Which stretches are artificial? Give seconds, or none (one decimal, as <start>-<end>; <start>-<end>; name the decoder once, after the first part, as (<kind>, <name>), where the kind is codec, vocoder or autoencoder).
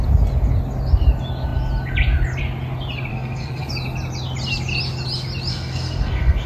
3.1-3.7 (codec, SNAC); 5.5-6.5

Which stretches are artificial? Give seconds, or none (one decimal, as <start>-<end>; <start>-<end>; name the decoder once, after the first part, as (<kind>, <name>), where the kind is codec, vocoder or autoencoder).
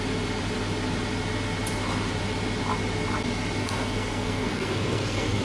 3.6-5.4 (codec, SNAC)